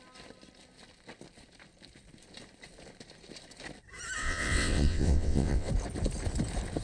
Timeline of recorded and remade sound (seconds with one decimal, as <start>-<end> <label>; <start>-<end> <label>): 0.0-4.2 recorded; 4.2-5.7 remade; 5.7-6.8 recorded